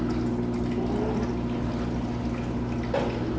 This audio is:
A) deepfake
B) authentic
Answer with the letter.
B